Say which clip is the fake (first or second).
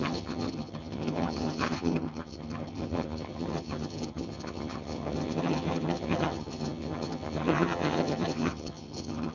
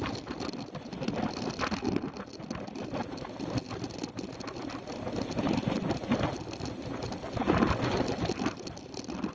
first